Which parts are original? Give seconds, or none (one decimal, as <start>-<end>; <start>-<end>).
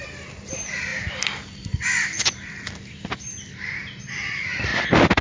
0.9-4.0; 4.7-5.2